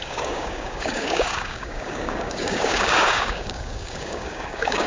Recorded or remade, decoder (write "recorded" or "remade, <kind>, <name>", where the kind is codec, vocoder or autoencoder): remade, codec, DAC